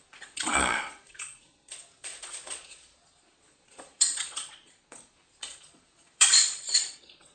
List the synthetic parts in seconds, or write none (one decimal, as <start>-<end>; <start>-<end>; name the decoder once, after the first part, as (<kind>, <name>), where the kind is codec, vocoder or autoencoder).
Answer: 0.0-7.3 (vocoder, Vocos)